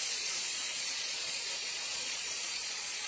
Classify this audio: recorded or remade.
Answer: remade